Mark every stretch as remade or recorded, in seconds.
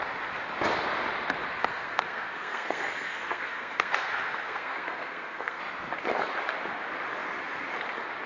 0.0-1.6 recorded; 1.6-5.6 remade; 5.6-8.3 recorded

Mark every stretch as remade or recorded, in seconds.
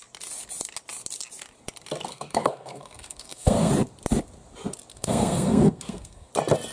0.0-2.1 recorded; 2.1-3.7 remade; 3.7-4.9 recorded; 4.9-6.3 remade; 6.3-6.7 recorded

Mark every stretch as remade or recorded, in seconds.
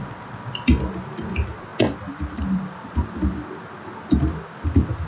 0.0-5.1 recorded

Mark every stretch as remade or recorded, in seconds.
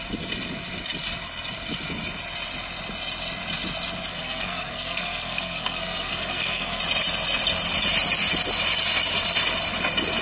0.0-4.1 recorded; 4.1-6.8 remade; 6.8-10.2 recorded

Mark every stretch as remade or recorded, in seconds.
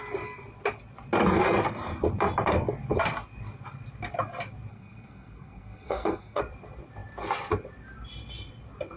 0.0-4.7 recorded; 4.7-6.4 remade; 6.4-9.0 recorded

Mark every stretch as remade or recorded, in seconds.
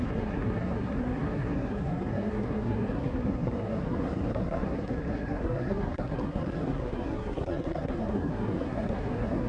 0.0-9.5 remade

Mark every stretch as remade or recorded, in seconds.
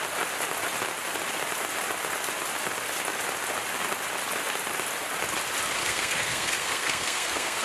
0.0-5.8 recorded; 5.8-7.6 remade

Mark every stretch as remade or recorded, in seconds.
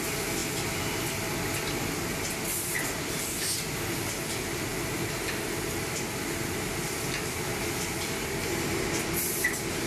0.0-9.9 recorded